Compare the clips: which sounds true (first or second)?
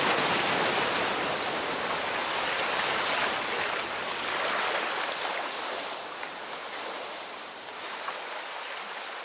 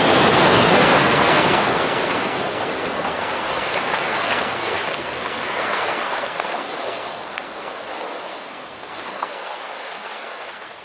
first